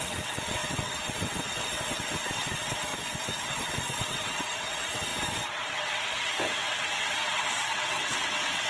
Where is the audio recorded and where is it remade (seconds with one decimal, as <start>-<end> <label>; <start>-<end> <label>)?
0.0-8.7 remade